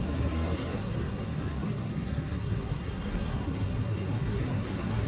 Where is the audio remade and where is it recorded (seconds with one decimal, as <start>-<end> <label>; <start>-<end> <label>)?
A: 0.0-5.1 remade